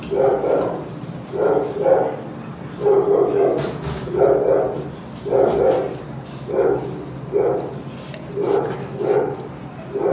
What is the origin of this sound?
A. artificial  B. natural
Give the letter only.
B